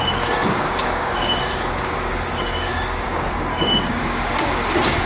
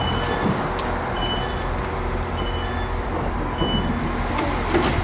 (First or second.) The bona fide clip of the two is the second